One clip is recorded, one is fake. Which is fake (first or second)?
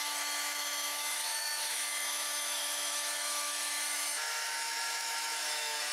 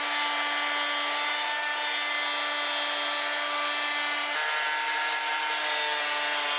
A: first